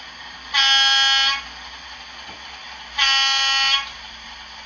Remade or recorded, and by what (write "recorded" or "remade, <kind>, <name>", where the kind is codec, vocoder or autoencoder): recorded